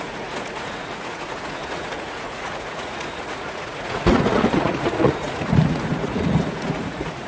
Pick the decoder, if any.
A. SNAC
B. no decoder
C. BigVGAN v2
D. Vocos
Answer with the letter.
D